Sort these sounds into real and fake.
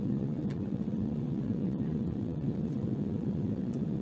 fake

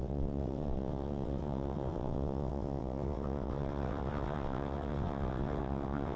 fake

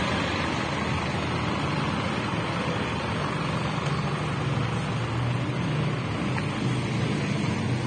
real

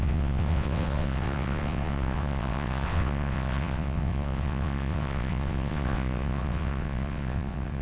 fake